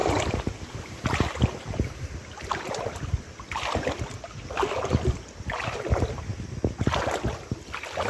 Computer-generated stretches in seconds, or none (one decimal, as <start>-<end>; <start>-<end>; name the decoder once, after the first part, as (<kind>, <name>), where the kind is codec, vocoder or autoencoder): 0.0-4.8 (vocoder, BigVGAN v2)